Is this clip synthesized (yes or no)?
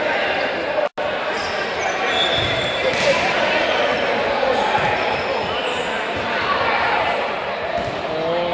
no